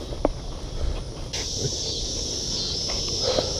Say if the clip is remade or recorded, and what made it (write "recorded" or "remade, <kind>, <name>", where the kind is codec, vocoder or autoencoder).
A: recorded